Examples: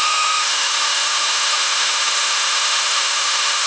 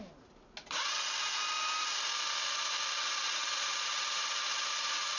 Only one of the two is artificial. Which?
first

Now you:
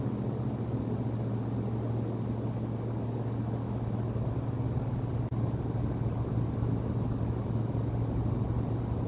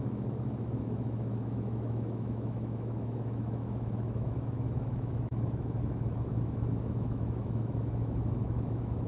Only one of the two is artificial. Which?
second